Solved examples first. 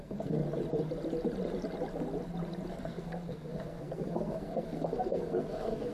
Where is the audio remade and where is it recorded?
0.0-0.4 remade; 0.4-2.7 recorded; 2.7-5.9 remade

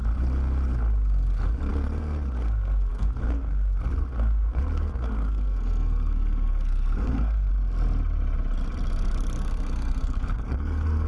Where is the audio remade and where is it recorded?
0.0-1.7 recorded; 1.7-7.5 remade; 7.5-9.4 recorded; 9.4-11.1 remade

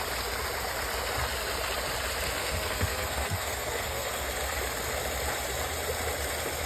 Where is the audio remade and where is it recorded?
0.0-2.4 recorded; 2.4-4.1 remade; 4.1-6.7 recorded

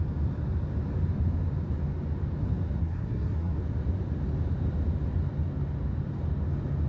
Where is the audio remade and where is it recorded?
0.0-2.8 recorded; 2.8-3.6 remade; 3.6-6.9 recorded